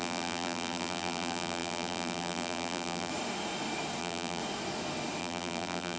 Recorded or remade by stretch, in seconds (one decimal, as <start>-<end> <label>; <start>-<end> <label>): 0.0-3.1 remade; 3.1-4.0 recorded; 4.0-4.4 remade; 4.4-5.2 recorded; 5.2-6.0 remade